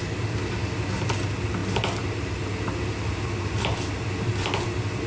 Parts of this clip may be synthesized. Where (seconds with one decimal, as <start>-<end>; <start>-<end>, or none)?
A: none